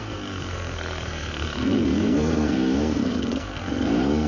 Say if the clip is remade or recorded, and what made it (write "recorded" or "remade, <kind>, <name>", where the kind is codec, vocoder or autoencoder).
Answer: remade, codec, SNAC